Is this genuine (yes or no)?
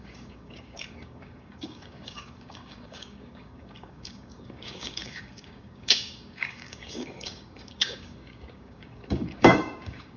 no